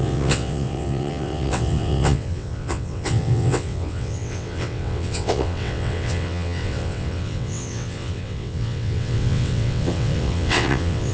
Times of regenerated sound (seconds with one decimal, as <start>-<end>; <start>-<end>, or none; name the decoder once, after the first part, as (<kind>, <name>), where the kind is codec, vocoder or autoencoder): 0.0-11.1 (vocoder, WaveNeXt)